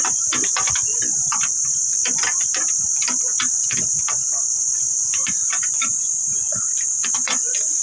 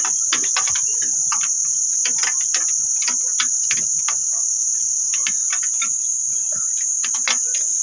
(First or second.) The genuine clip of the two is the second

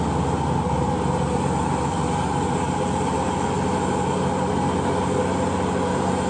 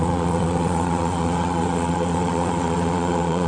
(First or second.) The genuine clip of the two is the first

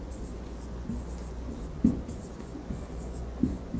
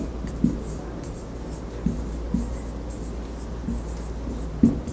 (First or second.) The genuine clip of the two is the second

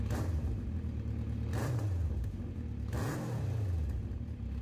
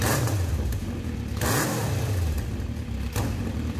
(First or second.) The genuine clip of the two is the first